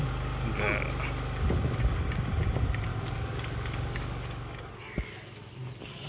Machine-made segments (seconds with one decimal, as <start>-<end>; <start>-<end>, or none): 2.9-4.7